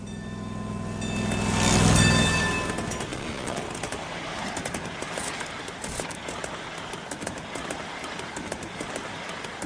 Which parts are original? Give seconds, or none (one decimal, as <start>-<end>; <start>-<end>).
0.0-3.1; 3.6-9.7